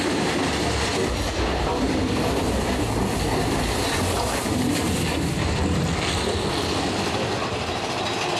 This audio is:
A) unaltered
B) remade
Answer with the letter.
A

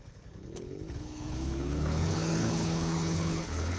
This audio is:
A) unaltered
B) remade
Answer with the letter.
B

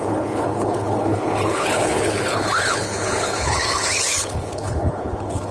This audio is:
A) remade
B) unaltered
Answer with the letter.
A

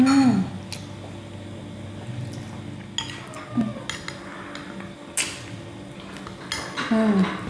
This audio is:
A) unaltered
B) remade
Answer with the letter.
A